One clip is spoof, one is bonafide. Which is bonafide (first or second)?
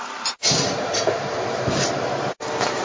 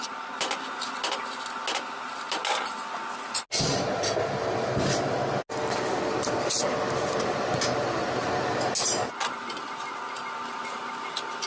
second